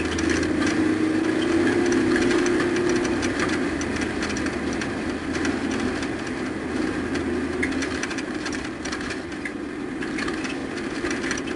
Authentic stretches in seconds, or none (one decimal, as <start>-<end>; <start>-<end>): 0.0-7.8; 9.6-10.6